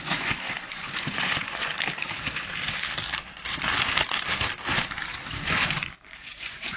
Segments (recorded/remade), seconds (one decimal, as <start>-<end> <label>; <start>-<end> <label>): 0.0-1.7 remade; 1.7-5.3 recorded; 5.3-6.8 remade